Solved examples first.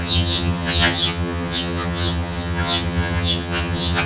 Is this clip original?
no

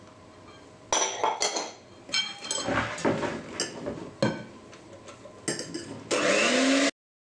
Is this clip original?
yes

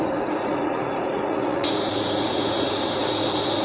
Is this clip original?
no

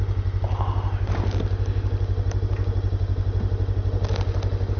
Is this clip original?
yes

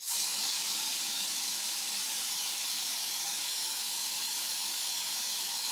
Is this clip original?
no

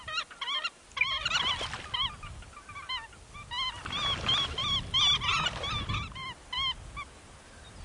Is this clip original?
yes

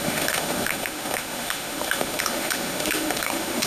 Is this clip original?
no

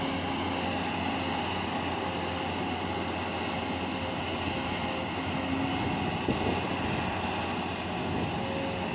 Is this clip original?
yes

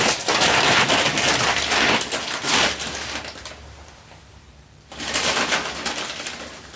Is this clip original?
yes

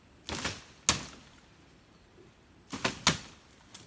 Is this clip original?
yes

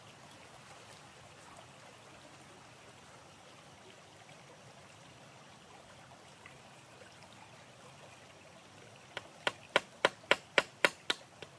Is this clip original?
yes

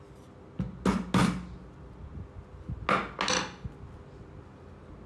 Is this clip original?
yes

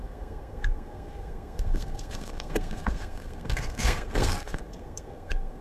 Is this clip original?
no